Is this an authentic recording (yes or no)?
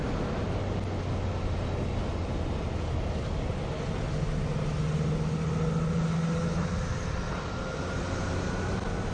yes